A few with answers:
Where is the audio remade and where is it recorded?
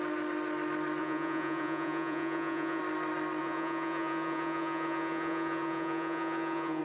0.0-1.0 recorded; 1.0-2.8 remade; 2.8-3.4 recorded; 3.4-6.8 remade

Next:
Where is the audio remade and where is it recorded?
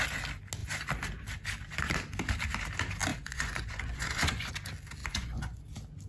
0.0-3.1 recorded; 3.1-4.5 remade; 4.5-5.0 recorded; 5.0-5.6 remade; 5.6-6.1 recorded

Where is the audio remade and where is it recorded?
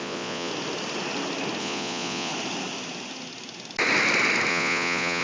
0.0-0.5 remade; 0.5-1.6 recorded; 1.6-2.3 remade; 2.3-4.5 recorded; 4.5-5.2 remade